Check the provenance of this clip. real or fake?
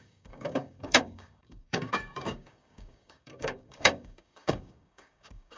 fake